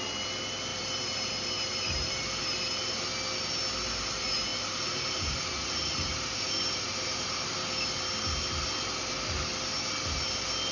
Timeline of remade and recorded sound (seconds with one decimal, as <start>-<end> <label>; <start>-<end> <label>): 0.0-0.7 recorded; 0.7-2.4 remade; 2.4-4.5 recorded; 4.5-7.5 remade; 7.5-10.7 recorded